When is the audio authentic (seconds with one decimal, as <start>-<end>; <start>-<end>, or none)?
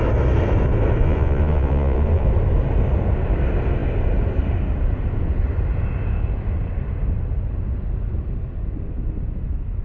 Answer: 0.0-1.0; 2.3-9.8